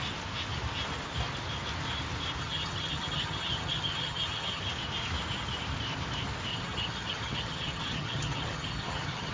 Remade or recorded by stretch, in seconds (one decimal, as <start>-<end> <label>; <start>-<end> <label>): 0.0-2.4 recorded; 2.4-4.6 remade; 4.6-6.5 recorded; 6.5-9.3 remade